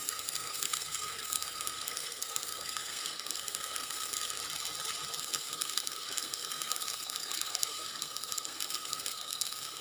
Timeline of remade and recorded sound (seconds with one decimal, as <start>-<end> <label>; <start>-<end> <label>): 0.0-4.4 remade; 4.4-5.2 recorded; 5.2-9.8 remade